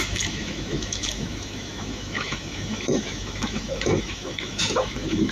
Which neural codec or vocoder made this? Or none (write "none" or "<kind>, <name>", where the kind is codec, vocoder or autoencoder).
autoencoder, DAC-VAE